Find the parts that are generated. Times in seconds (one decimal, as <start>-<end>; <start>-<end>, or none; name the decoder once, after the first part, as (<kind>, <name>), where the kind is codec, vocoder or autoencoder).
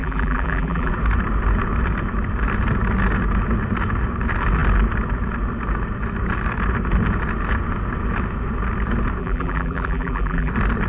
0.0-0.9 (vocoder, BigVGAN v2); 9.2-10.5